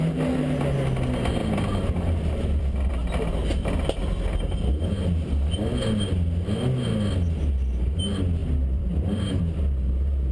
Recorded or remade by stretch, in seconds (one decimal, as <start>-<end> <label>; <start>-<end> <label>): 0.0-1.4 recorded; 1.4-2.9 remade; 2.9-3.5 recorded; 3.5-4.0 remade; 4.0-8.4 recorded; 8.4-9.4 remade; 9.4-10.3 recorded